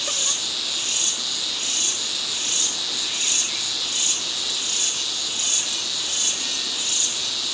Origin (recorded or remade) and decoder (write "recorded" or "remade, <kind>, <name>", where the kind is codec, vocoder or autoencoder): recorded